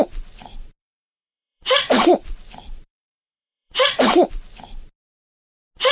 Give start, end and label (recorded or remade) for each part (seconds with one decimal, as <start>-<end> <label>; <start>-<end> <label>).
0.0-0.8 recorded; 0.8-4.3 remade; 4.3-5.9 recorded